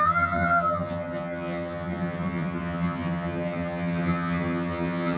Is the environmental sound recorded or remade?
remade